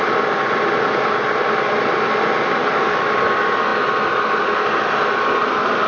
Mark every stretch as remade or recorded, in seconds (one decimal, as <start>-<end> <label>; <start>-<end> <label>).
0.0-2.6 recorded; 2.6-3.1 remade; 3.1-5.9 recorded